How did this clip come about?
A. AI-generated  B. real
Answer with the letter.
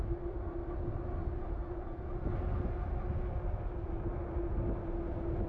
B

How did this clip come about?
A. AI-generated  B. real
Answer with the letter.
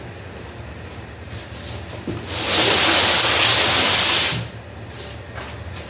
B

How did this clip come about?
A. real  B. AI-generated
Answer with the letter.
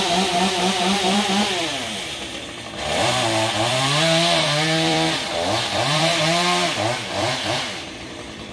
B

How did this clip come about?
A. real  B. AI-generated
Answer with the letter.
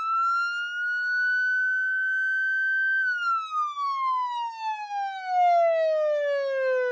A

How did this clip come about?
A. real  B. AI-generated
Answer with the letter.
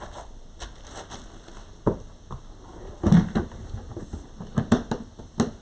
A